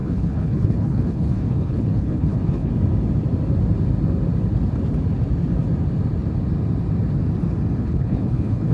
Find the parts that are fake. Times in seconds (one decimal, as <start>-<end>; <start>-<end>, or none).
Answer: 0.0-2.7; 7.8-8.7